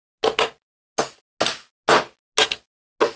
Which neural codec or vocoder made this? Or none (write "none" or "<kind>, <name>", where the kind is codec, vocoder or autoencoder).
none